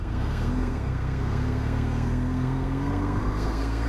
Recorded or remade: remade